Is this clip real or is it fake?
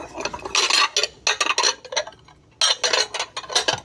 real